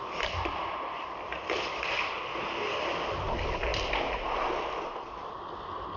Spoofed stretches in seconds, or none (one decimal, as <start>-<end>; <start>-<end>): none